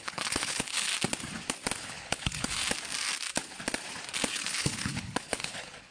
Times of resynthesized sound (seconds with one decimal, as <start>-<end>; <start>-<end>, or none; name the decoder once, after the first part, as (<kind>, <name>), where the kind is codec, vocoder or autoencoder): 0.0-0.9 (codec, HILCodec); 1.8-2.6; 4.3-5.9